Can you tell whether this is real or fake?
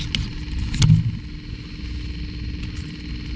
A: real